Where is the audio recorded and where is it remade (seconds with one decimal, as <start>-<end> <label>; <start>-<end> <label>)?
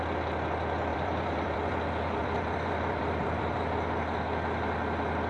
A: 0.0-0.9 recorded; 0.9-3.6 remade; 3.6-5.3 recorded